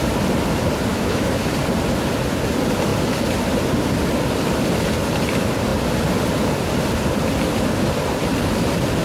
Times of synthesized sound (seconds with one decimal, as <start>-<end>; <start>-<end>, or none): 0.9-1.5